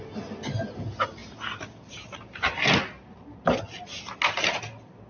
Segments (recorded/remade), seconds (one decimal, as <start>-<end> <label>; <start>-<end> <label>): 0.0-5.1 recorded